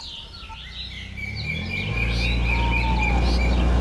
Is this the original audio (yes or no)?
yes